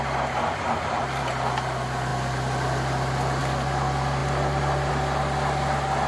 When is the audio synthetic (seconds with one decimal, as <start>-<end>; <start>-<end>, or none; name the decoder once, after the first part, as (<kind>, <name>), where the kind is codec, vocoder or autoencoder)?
none

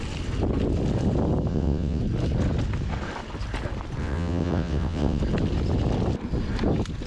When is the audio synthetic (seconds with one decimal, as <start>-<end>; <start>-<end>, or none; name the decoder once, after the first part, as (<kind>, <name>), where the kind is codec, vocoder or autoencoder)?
1.5-2.0 (vocoder, WaveNeXt); 4.0-5.2

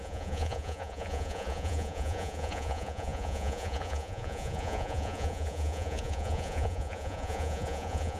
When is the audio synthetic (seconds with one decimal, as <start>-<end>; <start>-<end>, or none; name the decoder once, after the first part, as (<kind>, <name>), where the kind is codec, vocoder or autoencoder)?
0.0-8.2 (vocoder, Vocos)

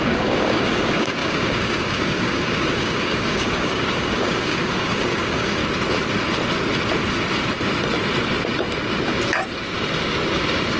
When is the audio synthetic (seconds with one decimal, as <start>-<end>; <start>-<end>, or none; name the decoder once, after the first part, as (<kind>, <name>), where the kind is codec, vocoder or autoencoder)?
0.0-5.6 (codec, DAC)

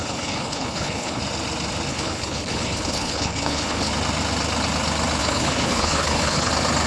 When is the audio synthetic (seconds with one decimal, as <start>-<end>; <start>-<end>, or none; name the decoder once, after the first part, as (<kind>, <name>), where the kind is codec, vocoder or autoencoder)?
0.0-1.2 (codec, HILCodec); 1.9-3.9; 5.2-6.5

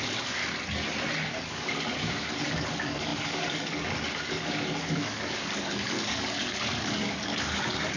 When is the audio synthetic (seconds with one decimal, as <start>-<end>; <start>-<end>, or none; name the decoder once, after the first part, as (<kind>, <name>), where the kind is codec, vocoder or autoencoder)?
0.0-0.4 (codec, DAC); 1.3-8.0

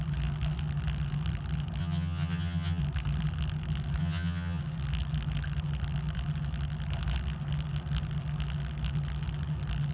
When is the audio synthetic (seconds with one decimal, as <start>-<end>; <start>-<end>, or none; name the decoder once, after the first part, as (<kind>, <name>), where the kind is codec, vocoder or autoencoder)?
1.8-2.8 (vocoder, HiFi-GAN); 4.0-4.6